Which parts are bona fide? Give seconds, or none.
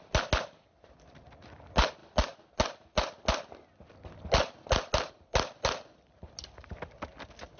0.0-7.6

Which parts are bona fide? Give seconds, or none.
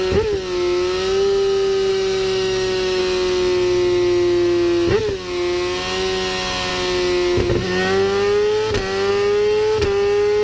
0.0-1.9; 3.0-10.4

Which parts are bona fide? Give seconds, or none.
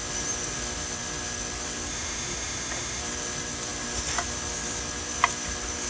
0.0-1.9; 3.0-5.9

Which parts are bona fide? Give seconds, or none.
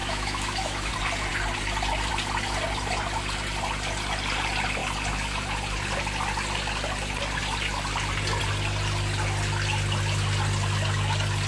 0.9-11.5